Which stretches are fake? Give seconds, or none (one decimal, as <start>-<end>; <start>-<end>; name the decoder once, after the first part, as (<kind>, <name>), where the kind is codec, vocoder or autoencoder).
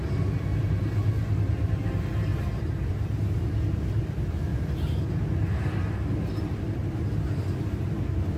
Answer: none